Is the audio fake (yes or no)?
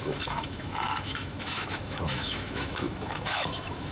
yes